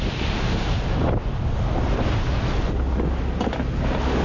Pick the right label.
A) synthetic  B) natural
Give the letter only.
B